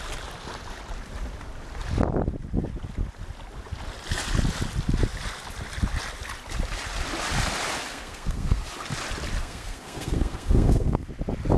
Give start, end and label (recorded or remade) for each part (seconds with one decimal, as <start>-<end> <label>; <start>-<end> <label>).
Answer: 0.0-7.9 recorded; 7.9-8.6 remade; 8.6-9.4 recorded; 9.4-11.1 remade; 11.1-11.6 recorded